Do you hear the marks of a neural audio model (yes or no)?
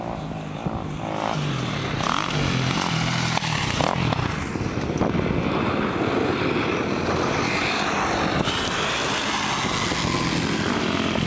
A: no